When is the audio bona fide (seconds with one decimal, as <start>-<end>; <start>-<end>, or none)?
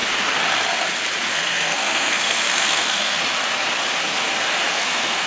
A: 0.0-1.3; 3.2-4.7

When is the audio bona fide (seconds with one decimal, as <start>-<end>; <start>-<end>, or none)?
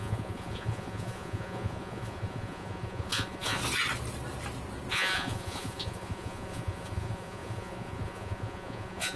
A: 3.6-4.9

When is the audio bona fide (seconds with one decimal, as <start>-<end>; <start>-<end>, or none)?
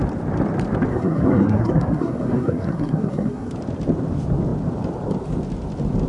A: 0.0-0.9; 3.5-6.1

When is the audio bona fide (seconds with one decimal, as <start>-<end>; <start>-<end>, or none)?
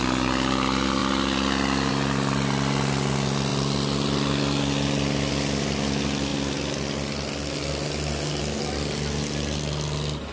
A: 0.0-10.3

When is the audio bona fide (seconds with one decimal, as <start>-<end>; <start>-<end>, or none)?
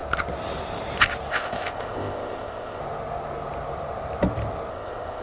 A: 0.0-1.3; 2.8-4.7